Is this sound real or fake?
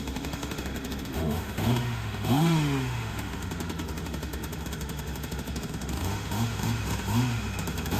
fake